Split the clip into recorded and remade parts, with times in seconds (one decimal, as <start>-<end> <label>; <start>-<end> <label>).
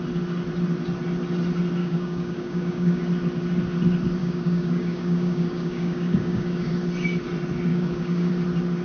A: 0.0-1.8 recorded; 1.8-3.0 remade; 3.0-4.2 recorded; 4.2-6.7 remade; 6.7-7.7 recorded; 7.7-8.3 remade; 8.3-8.8 recorded